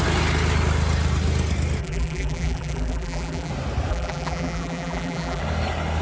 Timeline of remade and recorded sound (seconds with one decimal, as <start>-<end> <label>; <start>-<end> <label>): 0.0-1.8 recorded; 1.8-3.5 remade; 3.5-3.9 recorded; 3.9-5.4 remade; 5.4-6.0 recorded